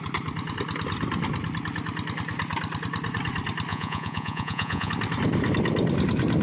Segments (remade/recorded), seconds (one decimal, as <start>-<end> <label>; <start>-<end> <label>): 0.0-3.7 recorded; 3.7-4.9 remade; 4.9-6.4 recorded